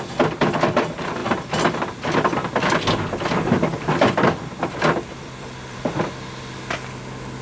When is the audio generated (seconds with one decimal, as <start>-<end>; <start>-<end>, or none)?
3.7-6.1